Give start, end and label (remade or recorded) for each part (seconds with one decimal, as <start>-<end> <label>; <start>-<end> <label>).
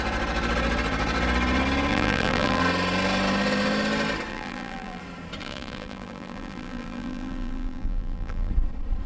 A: 0.0-1.9 recorded; 1.9-2.6 remade; 2.6-4.3 recorded; 4.3-5.0 remade; 5.0-5.4 recorded; 5.4-8.5 remade; 8.5-9.1 recorded